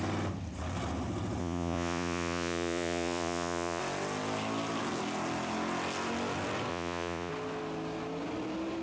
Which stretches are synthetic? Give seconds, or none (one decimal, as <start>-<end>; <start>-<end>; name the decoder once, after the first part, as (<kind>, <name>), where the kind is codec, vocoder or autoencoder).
1.4-3.8 (vocoder, Vocos); 6.7-7.3